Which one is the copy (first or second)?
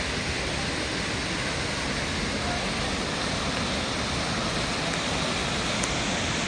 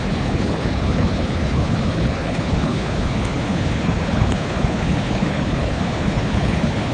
second